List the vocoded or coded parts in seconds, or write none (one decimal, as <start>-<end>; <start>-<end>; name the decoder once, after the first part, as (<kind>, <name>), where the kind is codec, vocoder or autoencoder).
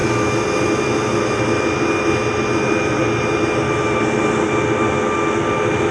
none